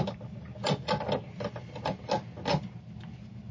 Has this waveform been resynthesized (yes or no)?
no